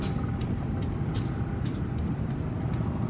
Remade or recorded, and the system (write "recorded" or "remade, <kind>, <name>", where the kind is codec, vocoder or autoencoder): recorded